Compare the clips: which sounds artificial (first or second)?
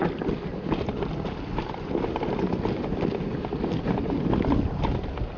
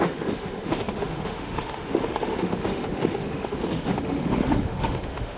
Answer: second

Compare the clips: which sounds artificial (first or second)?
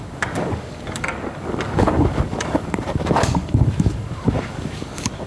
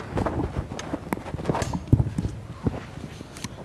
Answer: first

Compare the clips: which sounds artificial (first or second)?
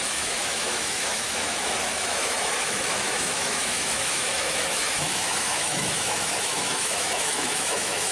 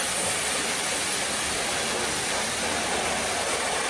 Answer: first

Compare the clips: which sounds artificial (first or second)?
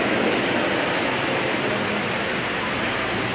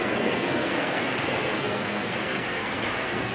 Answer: second